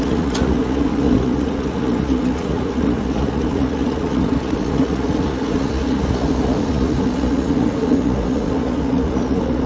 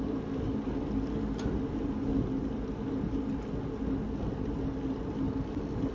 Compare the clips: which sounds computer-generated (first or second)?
first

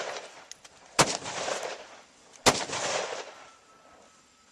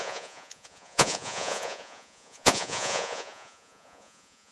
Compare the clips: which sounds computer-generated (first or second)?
second